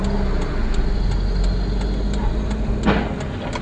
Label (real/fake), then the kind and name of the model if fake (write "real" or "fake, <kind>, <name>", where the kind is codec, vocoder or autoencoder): real